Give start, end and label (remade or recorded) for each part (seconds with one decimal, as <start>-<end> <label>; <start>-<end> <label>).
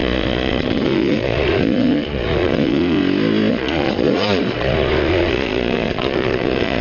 0.0-3.0 remade; 3.0-3.5 recorded; 3.5-6.8 remade